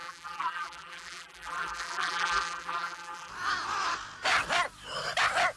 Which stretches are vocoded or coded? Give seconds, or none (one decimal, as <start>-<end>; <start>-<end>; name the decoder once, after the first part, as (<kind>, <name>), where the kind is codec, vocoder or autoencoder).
0.0-3.3 (vocoder, BigVGAN v2)